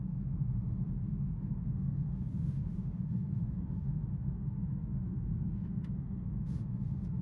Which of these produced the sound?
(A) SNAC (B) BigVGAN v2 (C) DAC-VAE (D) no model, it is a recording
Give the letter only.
C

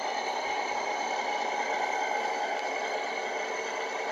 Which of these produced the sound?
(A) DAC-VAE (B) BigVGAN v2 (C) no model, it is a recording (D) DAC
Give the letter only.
C